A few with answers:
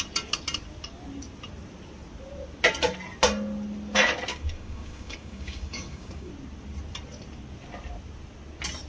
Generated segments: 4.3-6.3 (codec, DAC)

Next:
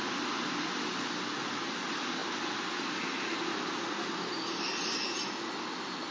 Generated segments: none

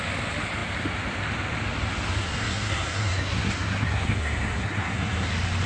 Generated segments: 2.2-5.3 (codec, SNAC)